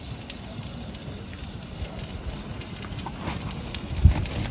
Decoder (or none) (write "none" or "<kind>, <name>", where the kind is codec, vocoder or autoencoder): none